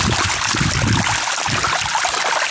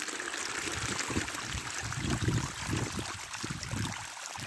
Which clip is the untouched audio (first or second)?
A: first